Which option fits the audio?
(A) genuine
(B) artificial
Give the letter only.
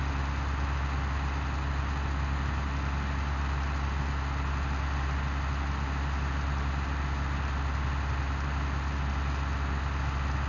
A